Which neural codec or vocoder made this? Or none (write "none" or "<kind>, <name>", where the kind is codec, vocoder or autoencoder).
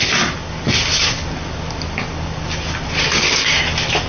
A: none